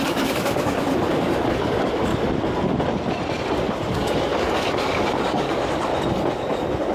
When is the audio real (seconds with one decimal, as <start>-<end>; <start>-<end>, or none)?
2.1-3.9; 5.9-6.9

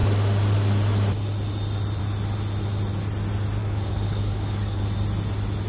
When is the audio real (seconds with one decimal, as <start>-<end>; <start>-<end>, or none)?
0.0-3.6; 4.8-5.7

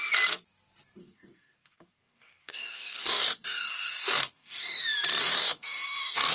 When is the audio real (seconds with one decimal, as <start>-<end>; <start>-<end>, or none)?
0.0-1.0; 4.8-5.2

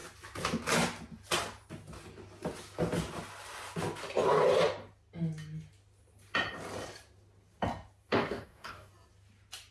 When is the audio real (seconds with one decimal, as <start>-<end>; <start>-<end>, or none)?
0.0-8.1; 8.9-9.7

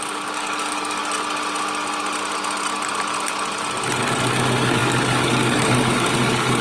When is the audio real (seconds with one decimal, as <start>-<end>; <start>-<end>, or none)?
1.0-4.2

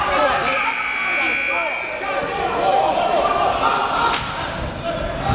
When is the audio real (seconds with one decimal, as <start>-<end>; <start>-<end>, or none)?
0.0-5.3

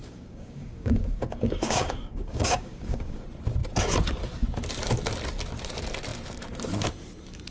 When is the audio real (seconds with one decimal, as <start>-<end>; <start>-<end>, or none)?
3.2-7.5

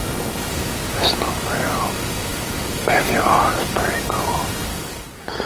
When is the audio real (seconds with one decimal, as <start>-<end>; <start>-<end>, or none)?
0.0-0.5; 3.8-4.7